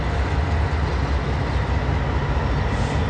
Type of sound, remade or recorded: recorded